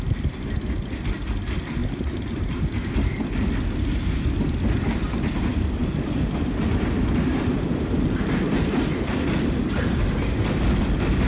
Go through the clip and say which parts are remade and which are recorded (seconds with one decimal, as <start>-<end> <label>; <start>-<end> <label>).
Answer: 0.0-1.8 recorded; 1.8-2.8 remade; 2.8-11.3 recorded